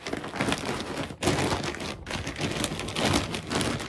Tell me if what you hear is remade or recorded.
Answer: recorded